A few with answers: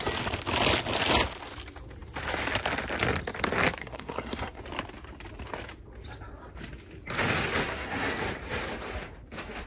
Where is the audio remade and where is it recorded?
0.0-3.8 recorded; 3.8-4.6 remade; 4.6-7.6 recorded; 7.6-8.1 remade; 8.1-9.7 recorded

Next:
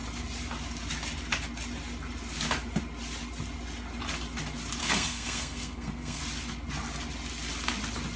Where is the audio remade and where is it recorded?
0.0-4.8 recorded; 4.8-6.2 remade; 6.2-8.2 recorded

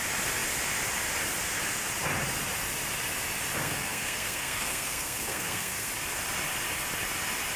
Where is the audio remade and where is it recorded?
0.0-3.6 recorded; 3.6-5.9 remade; 5.9-7.6 recorded

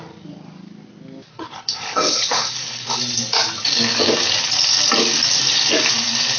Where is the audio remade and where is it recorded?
0.0-1.3 recorded; 1.3-3.0 remade; 3.0-6.4 recorded

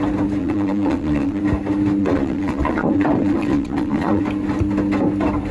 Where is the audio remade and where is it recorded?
0.0-0.4 recorded; 0.4-1.4 remade; 1.4-2.0 recorded; 2.0-4.2 remade; 4.2-5.5 recorded

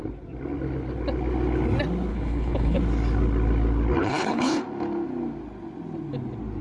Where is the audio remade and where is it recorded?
0.0-2.1 recorded; 2.1-2.8 remade; 2.8-4.0 recorded; 4.0-4.6 remade; 4.6-6.6 recorded

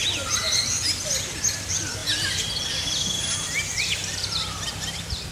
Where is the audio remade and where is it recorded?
0.0-2.0 recorded; 2.0-5.3 remade